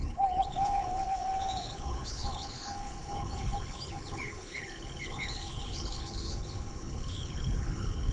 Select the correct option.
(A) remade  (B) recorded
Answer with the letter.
A